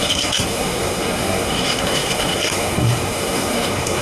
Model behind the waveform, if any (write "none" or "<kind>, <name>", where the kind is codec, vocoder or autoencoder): codec, SNAC